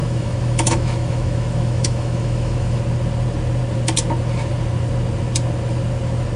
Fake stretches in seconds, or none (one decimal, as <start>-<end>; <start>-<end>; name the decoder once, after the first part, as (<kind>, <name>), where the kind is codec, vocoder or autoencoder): 0.0-2.8 (autoencoder, DAC-VAE)